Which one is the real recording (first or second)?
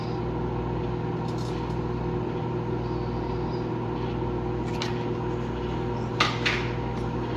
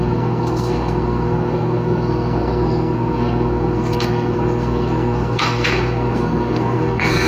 first